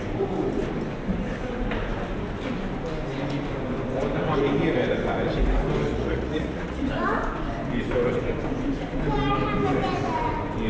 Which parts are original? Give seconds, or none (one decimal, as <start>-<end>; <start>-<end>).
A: 0.0-5.9; 6.9-10.7